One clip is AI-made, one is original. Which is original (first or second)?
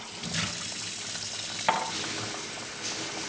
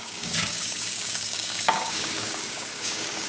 first